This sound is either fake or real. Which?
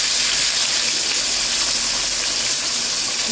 real